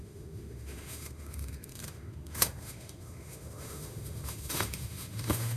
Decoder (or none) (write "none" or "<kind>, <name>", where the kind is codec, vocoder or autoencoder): autoencoder, DAC-VAE